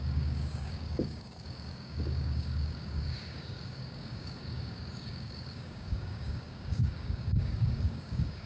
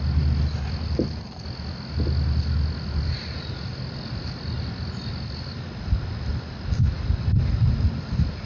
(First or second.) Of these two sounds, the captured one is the second